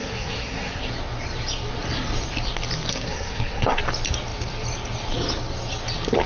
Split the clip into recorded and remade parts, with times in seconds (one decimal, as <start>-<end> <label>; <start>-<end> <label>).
0.0-0.9 remade; 0.9-2.9 recorded; 2.9-3.8 remade; 3.8-6.3 recorded